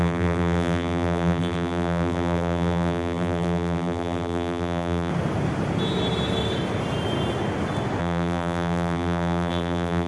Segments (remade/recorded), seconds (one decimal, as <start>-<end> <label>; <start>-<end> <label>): 0.0-5.1 remade; 5.1-8.0 recorded; 8.0-10.1 remade